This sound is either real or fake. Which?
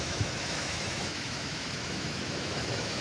fake